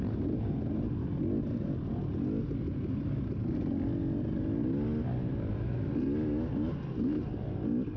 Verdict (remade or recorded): recorded